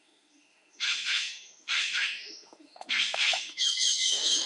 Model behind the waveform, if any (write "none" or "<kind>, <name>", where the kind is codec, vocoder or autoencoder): autoencoder, DAC-VAE